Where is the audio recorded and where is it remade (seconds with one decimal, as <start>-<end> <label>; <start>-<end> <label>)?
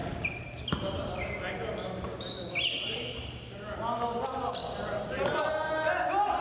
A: 0.0-6.4 recorded